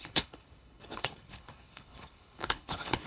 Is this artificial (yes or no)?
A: yes